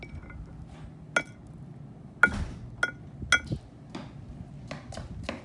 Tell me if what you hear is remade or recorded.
recorded